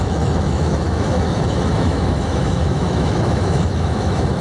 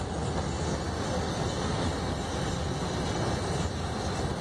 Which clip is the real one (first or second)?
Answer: second